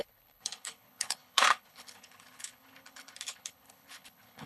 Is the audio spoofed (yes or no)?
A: yes